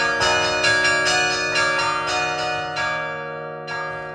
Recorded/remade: recorded